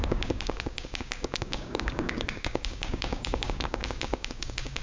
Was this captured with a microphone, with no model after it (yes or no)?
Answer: no